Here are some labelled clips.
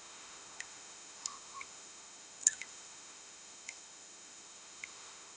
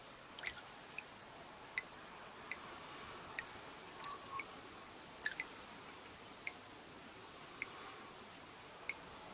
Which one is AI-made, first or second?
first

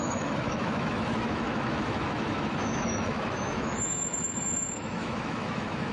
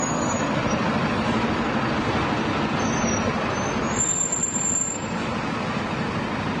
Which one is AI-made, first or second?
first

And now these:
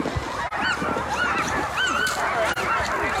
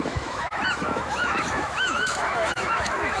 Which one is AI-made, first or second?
second